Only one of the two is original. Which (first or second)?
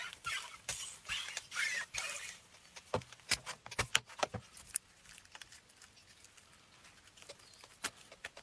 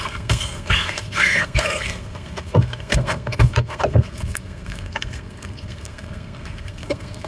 first